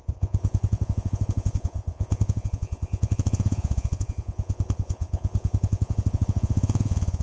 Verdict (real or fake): fake